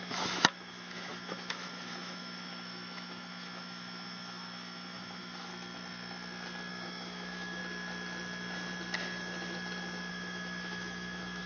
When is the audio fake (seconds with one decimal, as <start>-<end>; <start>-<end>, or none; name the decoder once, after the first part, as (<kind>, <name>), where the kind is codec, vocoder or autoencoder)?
0.0-5.5 (autoencoder, DAC-VAE); 6.7-7.6; 10.1-11.5